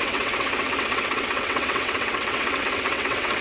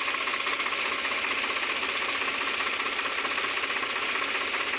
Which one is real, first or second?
second